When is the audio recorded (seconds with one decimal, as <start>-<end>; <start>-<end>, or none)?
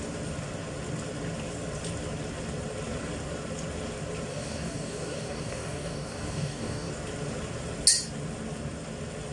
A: 0.0-4.3; 6.9-9.3